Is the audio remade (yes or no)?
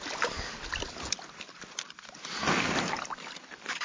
yes